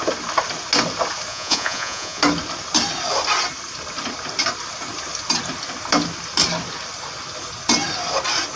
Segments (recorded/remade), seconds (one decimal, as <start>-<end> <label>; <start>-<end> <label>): 0.0-1.3 recorded; 1.3-2.2 remade; 2.2-8.6 recorded